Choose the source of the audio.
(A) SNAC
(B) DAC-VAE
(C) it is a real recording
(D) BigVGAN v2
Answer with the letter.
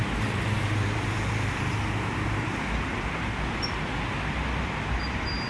D